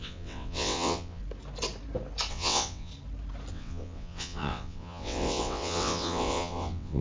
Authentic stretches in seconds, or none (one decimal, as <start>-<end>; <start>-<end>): 1.2-2.3; 2.9-3.5